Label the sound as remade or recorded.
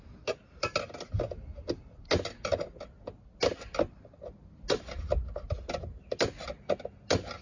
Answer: recorded